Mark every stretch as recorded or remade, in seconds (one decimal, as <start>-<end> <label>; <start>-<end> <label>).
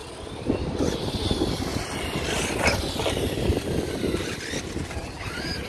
0.0-5.7 recorded